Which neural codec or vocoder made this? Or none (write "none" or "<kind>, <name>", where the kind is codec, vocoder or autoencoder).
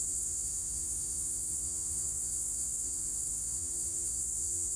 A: vocoder, Vocos